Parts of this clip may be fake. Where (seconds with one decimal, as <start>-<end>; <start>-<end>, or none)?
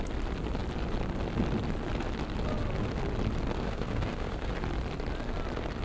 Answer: 3.6-4.5